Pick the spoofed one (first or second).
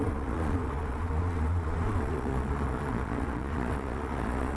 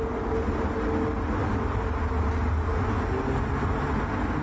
first